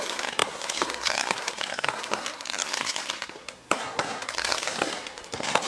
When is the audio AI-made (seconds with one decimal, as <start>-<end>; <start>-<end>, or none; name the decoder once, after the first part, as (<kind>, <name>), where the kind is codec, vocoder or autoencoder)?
0.0-5.7 (codec, SNAC)